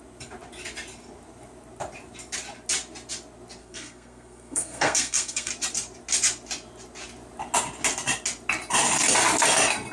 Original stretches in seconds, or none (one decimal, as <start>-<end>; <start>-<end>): 0.0-3.6; 5.5-9.9